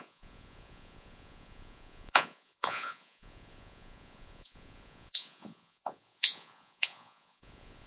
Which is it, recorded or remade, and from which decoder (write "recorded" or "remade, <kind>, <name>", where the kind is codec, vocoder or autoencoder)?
remade, vocoder, Vocos